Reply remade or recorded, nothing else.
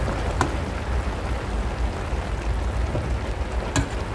recorded